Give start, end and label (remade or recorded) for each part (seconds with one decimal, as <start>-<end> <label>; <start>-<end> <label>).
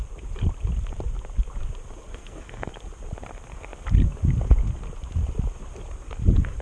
0.0-2.1 recorded; 2.1-2.7 remade; 2.7-6.6 recorded